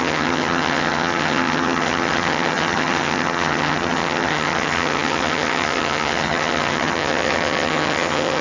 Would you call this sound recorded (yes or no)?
no